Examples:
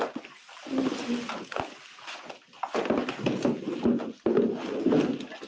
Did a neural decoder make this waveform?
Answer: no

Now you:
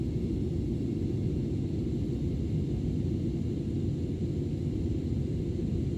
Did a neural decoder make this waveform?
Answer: no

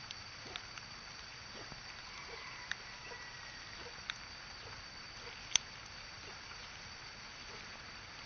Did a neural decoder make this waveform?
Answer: no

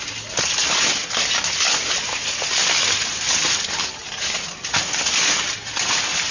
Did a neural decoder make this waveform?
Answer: no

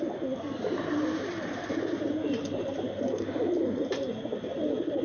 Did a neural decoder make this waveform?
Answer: yes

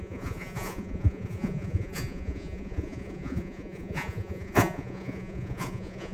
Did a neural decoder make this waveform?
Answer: yes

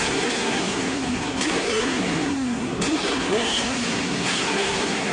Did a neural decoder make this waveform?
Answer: yes